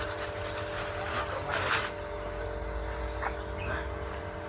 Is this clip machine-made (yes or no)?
no